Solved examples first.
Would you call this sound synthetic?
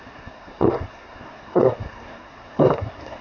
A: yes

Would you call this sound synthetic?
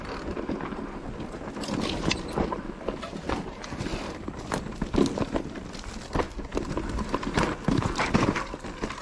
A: no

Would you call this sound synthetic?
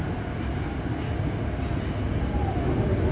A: no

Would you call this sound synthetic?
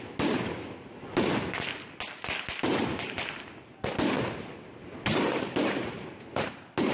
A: no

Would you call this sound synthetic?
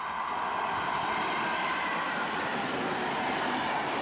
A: no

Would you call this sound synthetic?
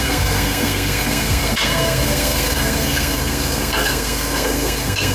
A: yes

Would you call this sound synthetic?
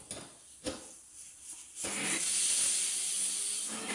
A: no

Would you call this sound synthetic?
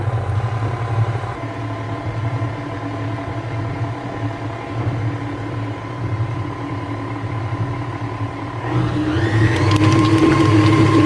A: no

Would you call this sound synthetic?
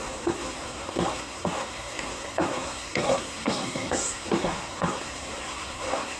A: yes